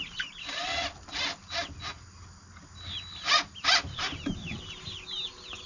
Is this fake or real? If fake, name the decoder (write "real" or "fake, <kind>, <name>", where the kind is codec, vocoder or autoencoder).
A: real